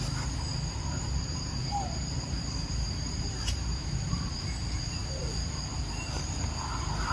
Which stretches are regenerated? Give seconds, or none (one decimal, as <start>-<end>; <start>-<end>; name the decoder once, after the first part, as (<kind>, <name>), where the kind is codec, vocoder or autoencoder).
0.5-4.6 (vocoder, BigVGAN v2)